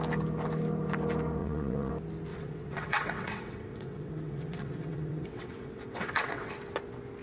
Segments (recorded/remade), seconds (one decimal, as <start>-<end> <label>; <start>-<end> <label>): 0.0-1.4 recorded; 1.4-1.9 remade; 1.9-2.3 recorded; 2.3-6.5 remade; 6.5-7.2 recorded